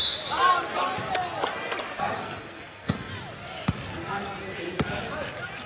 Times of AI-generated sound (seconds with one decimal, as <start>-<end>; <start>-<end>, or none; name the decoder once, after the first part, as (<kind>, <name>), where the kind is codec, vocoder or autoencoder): 2.2-3.1 (codec, SNAC)